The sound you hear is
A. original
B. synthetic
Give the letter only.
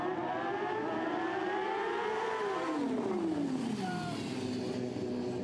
A